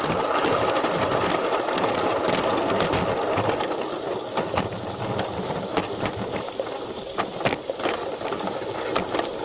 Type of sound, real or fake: real